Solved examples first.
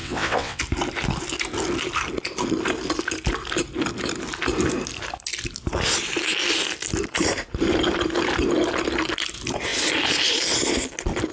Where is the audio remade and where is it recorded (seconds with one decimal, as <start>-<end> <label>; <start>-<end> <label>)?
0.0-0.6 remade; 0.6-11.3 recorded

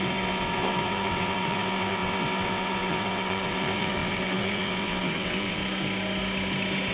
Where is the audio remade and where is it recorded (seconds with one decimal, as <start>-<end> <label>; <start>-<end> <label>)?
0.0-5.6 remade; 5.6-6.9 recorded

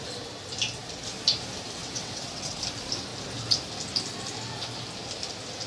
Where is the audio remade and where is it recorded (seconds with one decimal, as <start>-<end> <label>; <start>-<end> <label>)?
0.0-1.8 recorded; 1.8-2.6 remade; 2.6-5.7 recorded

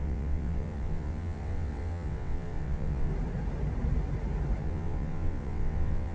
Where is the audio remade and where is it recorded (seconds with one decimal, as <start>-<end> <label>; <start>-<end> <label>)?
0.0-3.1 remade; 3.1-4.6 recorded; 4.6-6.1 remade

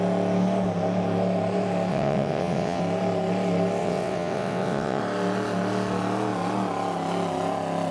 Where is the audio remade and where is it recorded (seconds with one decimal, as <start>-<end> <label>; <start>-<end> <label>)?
0.0-1.9 recorded; 1.9-2.8 remade; 2.8-3.8 recorded; 3.8-5.0 remade; 5.0-7.9 recorded

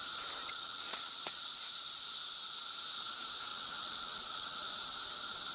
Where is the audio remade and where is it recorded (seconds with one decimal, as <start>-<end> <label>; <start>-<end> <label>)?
0.0-0.4 recorded; 0.4-1.5 remade; 1.5-3.5 recorded; 3.5-4.7 remade; 4.7-5.5 recorded

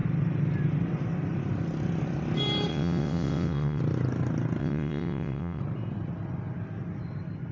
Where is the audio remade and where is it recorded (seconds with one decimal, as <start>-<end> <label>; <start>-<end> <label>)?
0.0-2.7 recorded; 2.7-3.8 remade; 3.8-4.6 recorded; 4.6-5.6 remade; 5.6-7.5 recorded